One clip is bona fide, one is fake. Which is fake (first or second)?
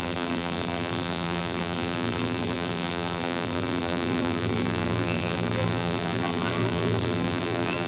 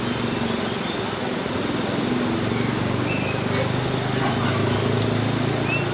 first